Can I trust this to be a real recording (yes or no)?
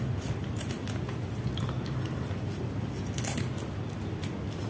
yes